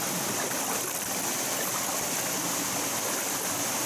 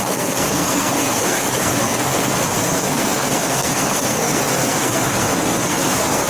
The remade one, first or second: second